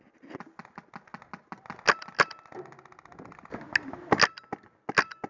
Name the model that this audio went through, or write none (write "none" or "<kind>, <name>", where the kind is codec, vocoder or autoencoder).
none